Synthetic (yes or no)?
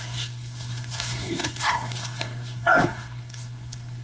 yes